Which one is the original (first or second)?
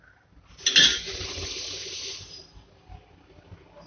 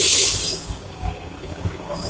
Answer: first